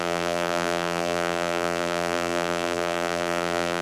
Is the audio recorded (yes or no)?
no